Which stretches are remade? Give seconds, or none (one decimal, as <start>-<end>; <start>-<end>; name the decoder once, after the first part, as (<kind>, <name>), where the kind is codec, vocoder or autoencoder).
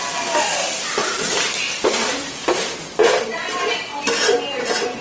1.0-3.0 (vocoder, BigVGAN v2); 3.9-5.0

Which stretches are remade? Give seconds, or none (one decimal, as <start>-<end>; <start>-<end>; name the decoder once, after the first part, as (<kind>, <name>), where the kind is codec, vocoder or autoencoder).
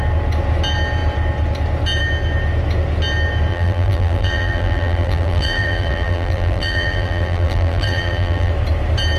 3.5-8.5 (vocoder, BigVGAN v2)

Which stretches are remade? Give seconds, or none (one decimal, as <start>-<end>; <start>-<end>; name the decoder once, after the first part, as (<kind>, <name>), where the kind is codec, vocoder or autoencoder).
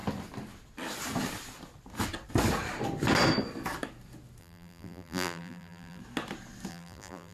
4.4-6.0 (vocoder, BigVGAN v2); 6.7-7.3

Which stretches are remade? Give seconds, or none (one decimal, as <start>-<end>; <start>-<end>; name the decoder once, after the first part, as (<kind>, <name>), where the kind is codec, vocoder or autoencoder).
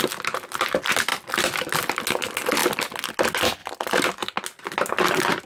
none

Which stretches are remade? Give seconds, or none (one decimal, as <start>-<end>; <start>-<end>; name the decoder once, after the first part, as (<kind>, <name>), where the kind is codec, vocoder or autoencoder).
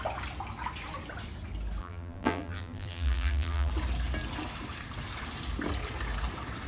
1.8-3.7 (vocoder, BigVGAN v2)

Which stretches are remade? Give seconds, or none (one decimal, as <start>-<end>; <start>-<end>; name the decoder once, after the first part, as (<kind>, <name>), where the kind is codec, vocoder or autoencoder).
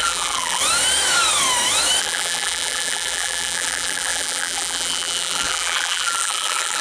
0.0-0.6 (vocoder, BigVGAN v2); 2.0-6.8